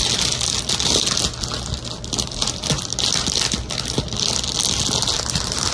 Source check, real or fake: real